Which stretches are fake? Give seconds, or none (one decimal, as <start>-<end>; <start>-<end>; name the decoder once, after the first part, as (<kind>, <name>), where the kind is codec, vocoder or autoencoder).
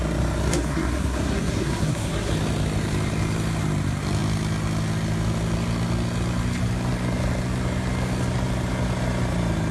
0.5-2.3 (codec, SNAC)